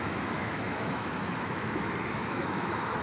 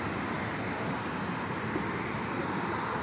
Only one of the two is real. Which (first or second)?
second